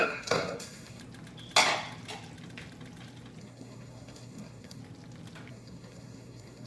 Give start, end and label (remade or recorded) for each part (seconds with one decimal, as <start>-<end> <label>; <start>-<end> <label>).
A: 0.0-1.0 remade; 1.0-3.4 recorded; 3.4-4.8 remade; 4.8-5.5 recorded; 5.5-6.7 remade